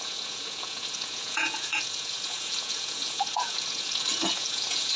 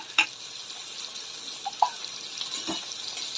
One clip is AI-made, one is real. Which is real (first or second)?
second